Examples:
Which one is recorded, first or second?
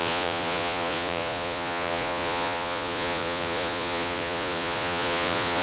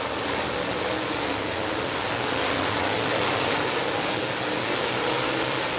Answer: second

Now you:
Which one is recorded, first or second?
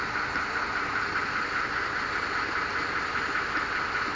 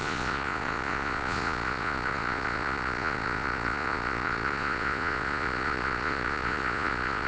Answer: first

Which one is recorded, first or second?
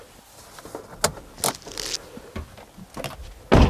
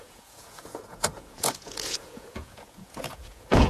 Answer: first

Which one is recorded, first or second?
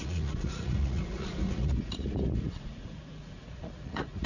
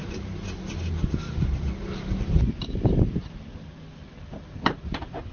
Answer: second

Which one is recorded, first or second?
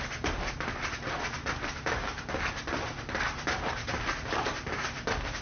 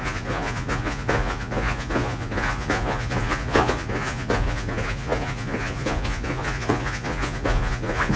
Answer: first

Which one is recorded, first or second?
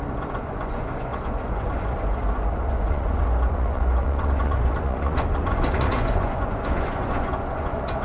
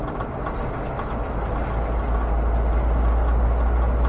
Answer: second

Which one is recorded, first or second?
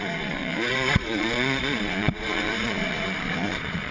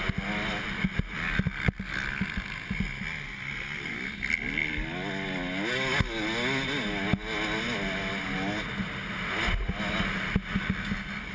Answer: second